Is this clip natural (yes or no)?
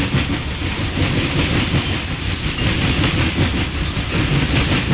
yes